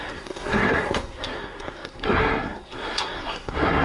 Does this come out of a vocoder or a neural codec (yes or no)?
yes